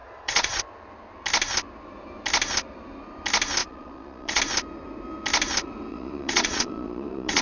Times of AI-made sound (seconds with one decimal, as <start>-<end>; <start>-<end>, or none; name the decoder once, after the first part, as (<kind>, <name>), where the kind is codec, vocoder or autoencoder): 0.0-0.6 (vocoder, Vocos); 3.6-4.4; 5.9-7.4